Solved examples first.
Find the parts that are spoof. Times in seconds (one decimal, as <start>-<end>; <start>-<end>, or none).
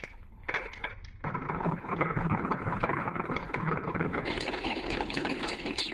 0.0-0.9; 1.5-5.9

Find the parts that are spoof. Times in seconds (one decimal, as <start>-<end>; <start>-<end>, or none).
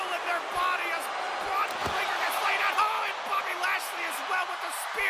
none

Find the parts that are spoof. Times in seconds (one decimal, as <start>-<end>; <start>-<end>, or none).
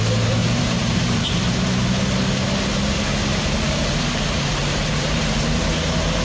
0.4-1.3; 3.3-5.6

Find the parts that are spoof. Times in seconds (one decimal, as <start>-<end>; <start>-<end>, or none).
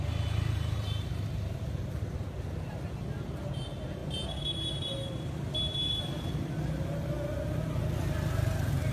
none